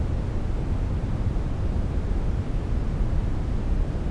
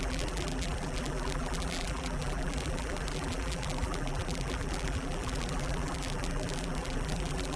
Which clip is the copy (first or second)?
second